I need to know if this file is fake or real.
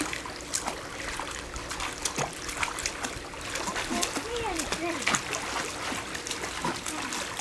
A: real